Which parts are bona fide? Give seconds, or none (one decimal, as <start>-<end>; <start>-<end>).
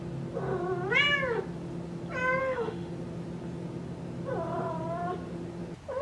0.0-2.4; 2.9-6.0